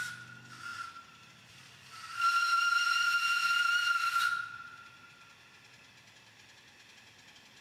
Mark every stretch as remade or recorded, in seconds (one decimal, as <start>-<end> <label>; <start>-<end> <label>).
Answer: 0.0-0.7 recorded; 0.7-4.2 remade; 4.2-7.6 recorded

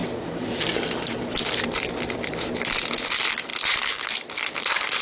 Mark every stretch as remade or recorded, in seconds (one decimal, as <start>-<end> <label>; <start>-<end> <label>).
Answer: 0.0-5.0 remade

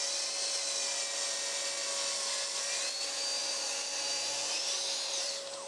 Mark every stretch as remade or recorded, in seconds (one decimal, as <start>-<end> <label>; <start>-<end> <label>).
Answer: 0.0-3.4 recorded; 3.4-5.3 remade; 5.3-5.7 recorded

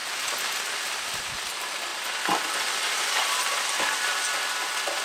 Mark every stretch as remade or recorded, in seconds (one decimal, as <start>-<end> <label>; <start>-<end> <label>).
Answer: 0.0-1.9 recorded; 1.9-4.2 remade; 4.2-5.0 recorded